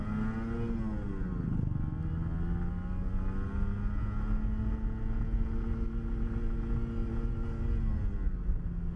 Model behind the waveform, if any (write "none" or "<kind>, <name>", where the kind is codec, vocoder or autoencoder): none